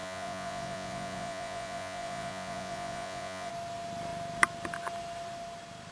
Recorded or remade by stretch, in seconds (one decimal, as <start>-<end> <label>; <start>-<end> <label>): 0.0-3.5 remade; 3.5-5.9 recorded